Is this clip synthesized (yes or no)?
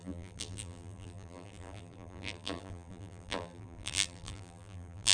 yes